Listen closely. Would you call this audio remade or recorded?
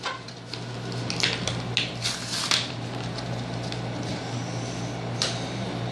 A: recorded